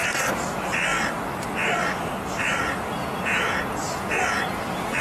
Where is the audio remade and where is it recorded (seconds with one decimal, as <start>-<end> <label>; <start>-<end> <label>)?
0.0-3.0 recorded; 3.0-4.2 remade; 4.2-5.0 recorded